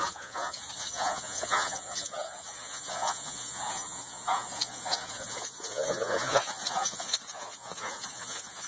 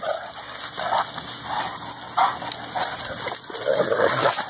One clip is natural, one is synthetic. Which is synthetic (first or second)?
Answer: first